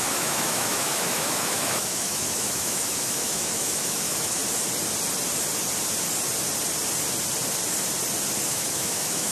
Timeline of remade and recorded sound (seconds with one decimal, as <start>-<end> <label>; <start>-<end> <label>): 0.0-4.4 remade; 4.4-8.5 recorded; 8.5-9.3 remade